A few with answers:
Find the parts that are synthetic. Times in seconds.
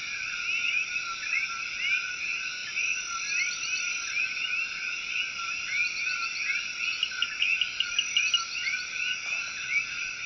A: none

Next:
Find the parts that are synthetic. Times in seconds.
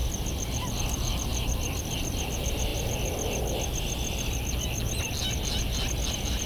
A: 0.0-2.7 (vocoder, BigVGAN v2); 6.1-6.5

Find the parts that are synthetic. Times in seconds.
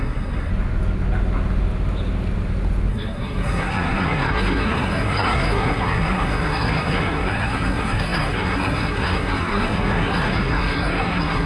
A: 0.0-0.5 (codec, SNAC); 2.9-11.5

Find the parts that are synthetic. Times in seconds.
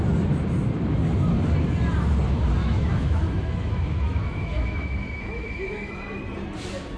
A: 2.6-5.9 (autoencoder, DAC-VAE)